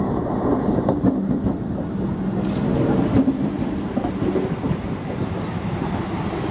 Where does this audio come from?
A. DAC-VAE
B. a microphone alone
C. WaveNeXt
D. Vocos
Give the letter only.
B